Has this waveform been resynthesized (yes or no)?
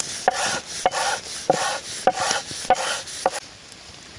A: no